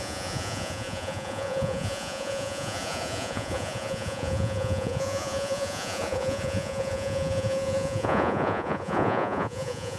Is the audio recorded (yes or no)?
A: no